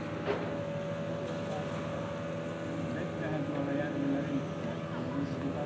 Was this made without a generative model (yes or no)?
yes